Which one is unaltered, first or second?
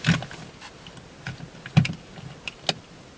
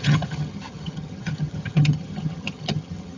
first